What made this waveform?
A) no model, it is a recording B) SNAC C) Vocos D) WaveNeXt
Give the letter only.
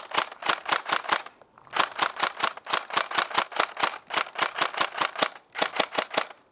A